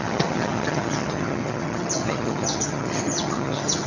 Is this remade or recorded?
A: remade